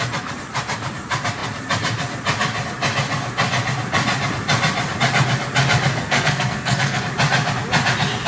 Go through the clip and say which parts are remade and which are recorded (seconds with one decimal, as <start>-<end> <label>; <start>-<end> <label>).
0.0-5.9 recorded; 5.9-7.0 remade; 7.0-8.3 recorded